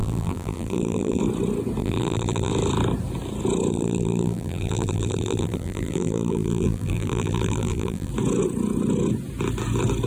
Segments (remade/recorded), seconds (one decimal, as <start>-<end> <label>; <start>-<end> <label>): 0.0-1.2 remade; 1.2-1.8 recorded; 1.8-2.5 remade; 2.5-3.7 recorded; 3.7-8.1 remade; 8.1-10.1 recorded